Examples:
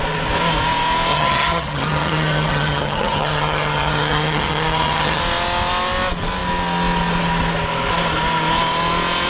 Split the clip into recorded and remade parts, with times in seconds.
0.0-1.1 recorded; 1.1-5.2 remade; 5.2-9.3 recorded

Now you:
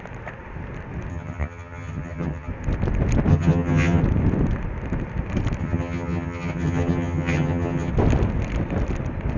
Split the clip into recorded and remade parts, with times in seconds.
0.0-1.1 recorded; 1.1-2.5 remade; 2.5-3.3 recorded; 3.3-4.0 remade; 4.0-5.6 recorded; 5.6-7.9 remade; 7.9-9.4 recorded

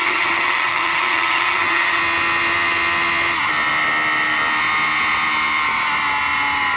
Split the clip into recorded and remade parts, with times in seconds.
0.0-2.0 remade; 2.0-6.8 recorded